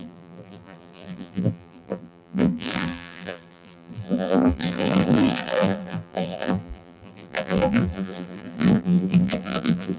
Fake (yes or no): yes